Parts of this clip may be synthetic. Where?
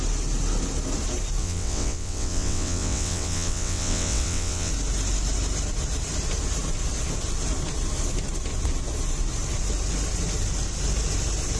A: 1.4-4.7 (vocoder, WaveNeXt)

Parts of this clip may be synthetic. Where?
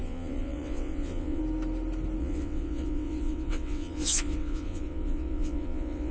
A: 0.0-1.4 (vocoder, WaveNeXt); 2.2-6.1